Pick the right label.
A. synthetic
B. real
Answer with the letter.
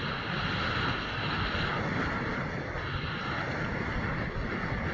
B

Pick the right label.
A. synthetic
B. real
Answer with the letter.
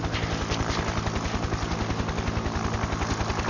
B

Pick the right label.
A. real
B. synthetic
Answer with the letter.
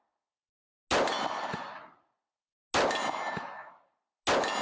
A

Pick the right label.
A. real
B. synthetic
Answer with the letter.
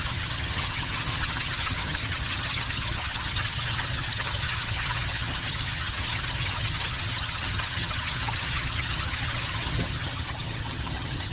B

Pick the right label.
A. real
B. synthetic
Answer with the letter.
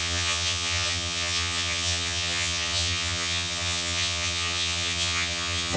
B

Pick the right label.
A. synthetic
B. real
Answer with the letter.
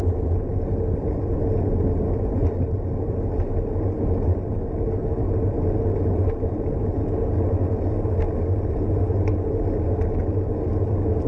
B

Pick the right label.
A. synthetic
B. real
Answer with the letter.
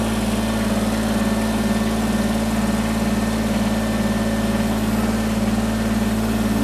B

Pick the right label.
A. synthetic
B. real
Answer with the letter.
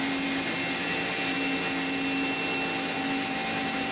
B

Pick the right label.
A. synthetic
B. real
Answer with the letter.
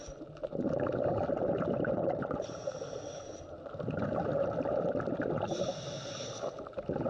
B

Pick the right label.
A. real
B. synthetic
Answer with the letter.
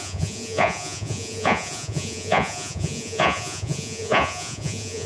B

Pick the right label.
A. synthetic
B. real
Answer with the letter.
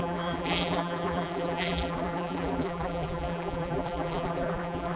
A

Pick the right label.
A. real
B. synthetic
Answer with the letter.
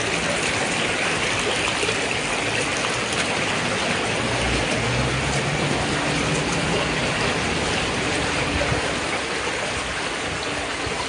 A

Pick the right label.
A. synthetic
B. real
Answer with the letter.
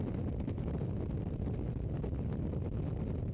B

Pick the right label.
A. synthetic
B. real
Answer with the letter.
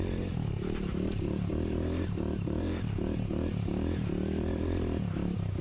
A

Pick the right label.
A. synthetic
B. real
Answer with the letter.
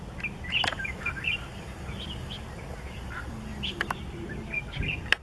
B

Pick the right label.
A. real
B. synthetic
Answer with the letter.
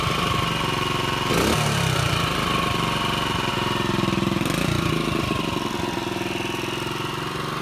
A